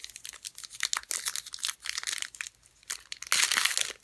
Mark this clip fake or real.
real